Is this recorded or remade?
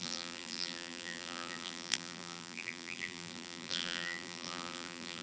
remade